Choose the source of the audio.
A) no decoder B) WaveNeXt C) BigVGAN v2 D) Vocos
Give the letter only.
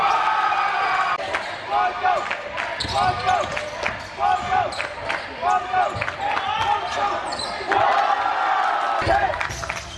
A